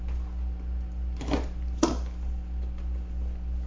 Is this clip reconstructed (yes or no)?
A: no